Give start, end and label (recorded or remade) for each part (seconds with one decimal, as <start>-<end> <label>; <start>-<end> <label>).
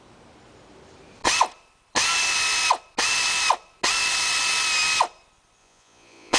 0.0-5.6 recorded; 5.6-6.4 remade